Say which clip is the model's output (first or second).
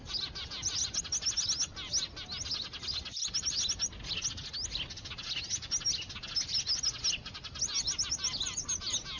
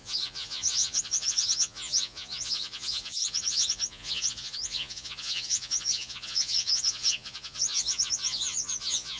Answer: second